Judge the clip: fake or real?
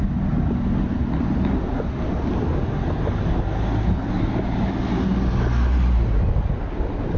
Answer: real